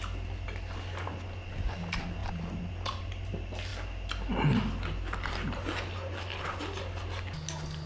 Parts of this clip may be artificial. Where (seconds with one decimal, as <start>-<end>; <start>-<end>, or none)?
2.2-3.3